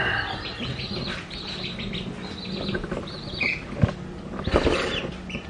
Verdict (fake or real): real